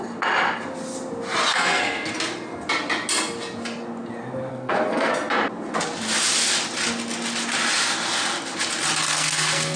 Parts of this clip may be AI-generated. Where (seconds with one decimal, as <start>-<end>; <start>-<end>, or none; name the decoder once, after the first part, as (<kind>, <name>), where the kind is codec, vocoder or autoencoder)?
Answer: 1.5-2.1 (codec, SNAC); 4.5-5.1; 9.1-9.8

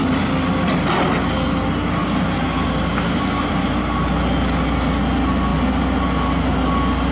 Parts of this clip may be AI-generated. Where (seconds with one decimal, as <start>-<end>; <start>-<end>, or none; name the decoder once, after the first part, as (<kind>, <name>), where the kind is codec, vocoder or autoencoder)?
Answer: none

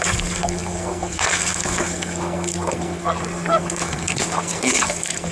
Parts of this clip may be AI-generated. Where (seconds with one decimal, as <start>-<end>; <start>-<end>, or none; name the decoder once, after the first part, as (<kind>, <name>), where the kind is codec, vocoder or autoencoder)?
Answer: 0.0-5.3 (codec, SNAC)

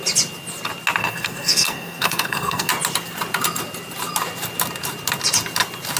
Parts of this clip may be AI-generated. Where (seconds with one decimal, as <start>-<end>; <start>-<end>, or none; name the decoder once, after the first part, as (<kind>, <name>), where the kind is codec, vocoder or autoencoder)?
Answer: 1.0-2.7 (codec, SNAC)

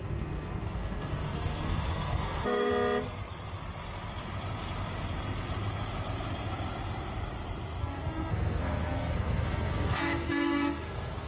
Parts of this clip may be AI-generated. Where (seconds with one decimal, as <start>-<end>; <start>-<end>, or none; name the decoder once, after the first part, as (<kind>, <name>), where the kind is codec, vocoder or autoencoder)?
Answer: 0.0-2.7 (codec, SNAC); 7.8-11.3

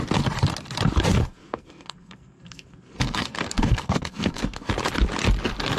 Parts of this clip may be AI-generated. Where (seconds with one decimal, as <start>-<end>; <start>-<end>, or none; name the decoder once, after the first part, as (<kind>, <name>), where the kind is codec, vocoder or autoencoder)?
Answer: 1.2-4.7 (codec, SNAC)

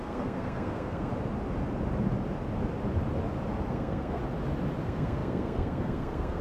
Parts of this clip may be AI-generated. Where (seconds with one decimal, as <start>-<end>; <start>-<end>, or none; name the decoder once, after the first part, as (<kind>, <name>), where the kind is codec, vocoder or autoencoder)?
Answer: 0.0-1.1 (codec, SNAC); 3.7-4.2; 4.8-6.4

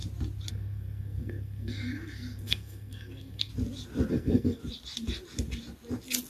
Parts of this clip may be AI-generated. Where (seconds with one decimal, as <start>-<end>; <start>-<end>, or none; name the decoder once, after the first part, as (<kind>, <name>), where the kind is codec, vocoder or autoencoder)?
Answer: 0.5-3.5 (codec, SNAC); 4.1-4.6